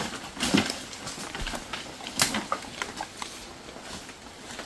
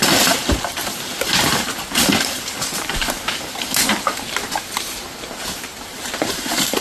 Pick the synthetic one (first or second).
second